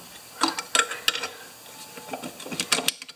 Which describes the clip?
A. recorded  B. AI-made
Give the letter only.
A